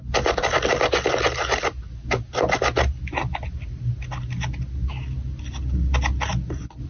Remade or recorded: recorded